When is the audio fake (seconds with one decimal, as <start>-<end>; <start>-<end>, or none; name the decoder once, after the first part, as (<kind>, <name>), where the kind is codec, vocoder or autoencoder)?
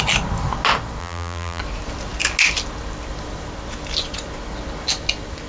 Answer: 1.0-1.6 (vocoder, BigVGAN v2)